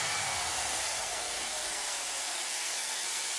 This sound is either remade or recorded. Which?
remade